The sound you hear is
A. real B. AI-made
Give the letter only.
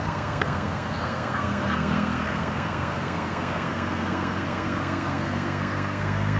B